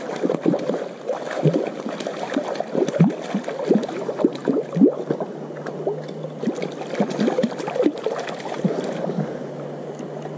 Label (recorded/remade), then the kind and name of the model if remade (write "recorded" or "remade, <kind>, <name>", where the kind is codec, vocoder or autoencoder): recorded